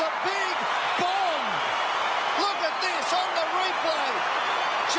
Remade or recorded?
recorded